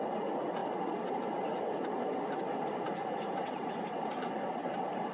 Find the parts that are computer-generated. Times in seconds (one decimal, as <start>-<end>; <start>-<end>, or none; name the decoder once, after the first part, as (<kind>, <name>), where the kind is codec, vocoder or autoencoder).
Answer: none